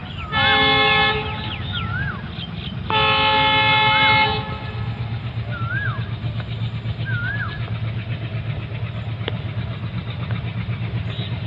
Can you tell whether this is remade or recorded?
recorded